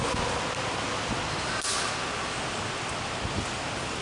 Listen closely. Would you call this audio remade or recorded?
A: recorded